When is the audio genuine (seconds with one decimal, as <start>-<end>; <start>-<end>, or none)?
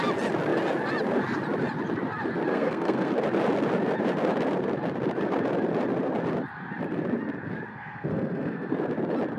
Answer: 0.0-2.5; 3.1-7.7; 8.7-9.4